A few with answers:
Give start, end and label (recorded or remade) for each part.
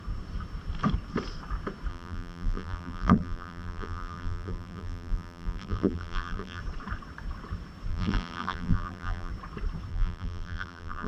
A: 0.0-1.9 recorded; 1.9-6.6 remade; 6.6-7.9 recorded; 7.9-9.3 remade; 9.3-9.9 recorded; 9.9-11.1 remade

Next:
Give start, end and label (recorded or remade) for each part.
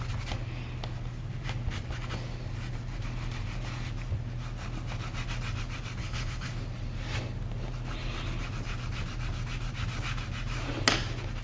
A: 0.0-6.0 recorded; 6.0-6.5 remade; 6.5-11.4 recorded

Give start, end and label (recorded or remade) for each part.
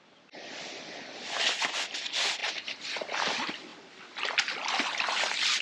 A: 0.0-5.6 recorded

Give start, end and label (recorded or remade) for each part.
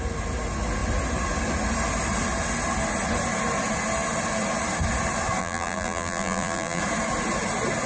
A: 0.0-5.4 recorded; 5.4-6.8 remade; 6.8-7.9 recorded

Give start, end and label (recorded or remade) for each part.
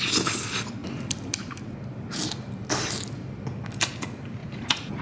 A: 0.0-4.4 recorded; 4.4-5.0 remade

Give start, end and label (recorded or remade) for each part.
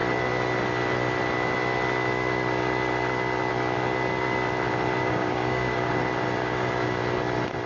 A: 0.0-5.0 recorded; 5.0-5.9 remade; 5.9-6.4 recorded; 6.4-7.0 remade; 7.0-7.7 recorded